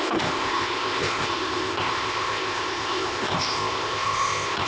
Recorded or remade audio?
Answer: remade